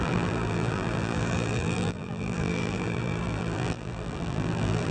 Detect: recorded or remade remade